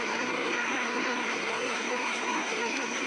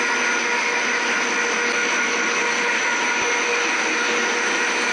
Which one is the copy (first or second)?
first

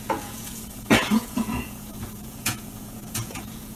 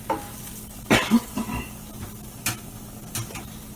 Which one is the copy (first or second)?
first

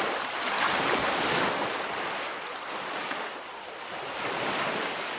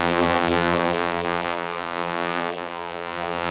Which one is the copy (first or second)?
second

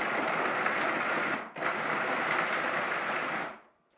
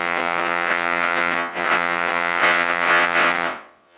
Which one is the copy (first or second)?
second